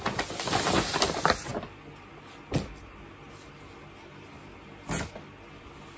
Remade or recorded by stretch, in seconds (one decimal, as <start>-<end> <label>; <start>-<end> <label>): 0.0-6.0 recorded